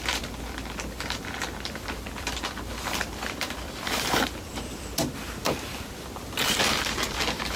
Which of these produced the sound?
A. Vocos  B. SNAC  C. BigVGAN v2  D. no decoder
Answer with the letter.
C